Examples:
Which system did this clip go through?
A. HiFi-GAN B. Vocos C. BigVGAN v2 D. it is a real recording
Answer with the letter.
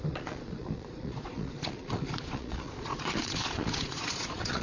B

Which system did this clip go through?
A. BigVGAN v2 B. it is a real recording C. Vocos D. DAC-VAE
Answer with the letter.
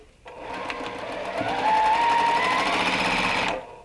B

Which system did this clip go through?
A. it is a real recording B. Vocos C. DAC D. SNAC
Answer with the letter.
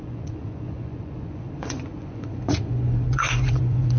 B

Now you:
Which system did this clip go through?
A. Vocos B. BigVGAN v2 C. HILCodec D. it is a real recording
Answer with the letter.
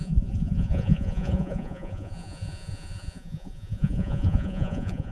A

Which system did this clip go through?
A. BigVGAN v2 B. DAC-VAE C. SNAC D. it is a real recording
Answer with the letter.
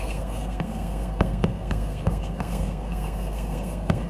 C